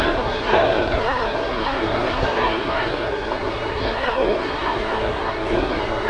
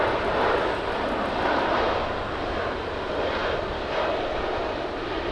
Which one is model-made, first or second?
first